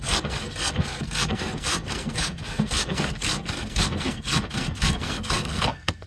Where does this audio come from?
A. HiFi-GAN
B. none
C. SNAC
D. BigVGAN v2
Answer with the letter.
C